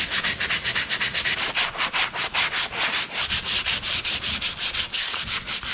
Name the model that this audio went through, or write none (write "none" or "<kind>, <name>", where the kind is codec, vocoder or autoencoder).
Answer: none